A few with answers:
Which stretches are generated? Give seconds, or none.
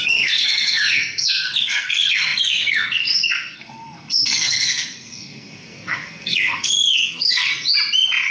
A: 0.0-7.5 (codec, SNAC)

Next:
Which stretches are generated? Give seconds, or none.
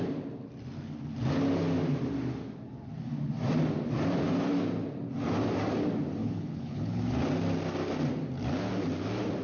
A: 6.2-7.0 (codec, HILCodec)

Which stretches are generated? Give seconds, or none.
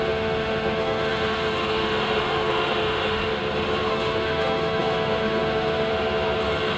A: 0.0-3.3 (autoencoder, DAC-VAE); 3.9-5.9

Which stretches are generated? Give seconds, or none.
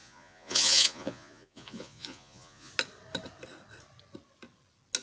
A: 0.0-2.7 (vocoder, Vocos)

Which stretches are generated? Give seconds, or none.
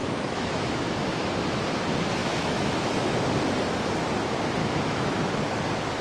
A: 0.0-1.3 (autoencoder, DAC-VAE); 2.2-3.2; 4.6-5.3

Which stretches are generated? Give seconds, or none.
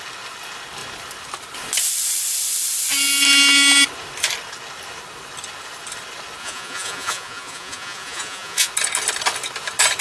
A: 6.4-8.7 (vocoder, Vocos)